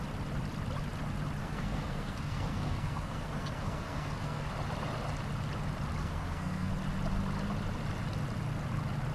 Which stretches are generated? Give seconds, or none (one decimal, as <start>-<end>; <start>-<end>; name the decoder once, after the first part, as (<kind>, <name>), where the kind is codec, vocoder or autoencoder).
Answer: 1.4-4.5 (codec, SNAC); 6.0-6.7